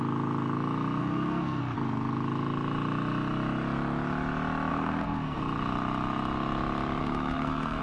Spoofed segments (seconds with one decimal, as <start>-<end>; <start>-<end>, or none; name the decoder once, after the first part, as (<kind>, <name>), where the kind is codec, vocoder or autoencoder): 1.0-1.6 (codec, SNAC); 4.7-5.4; 7.0-7.8